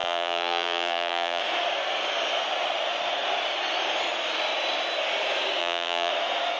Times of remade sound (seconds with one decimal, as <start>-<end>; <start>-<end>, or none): 0.0-1.4; 5.6-6.1